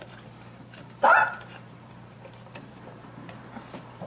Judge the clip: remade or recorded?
remade